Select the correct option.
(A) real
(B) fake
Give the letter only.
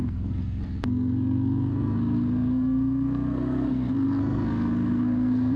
B